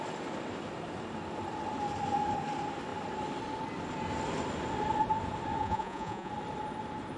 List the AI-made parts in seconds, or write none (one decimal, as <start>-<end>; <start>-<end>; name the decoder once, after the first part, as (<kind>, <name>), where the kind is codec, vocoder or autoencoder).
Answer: 5.6-6.3 (vocoder, Vocos)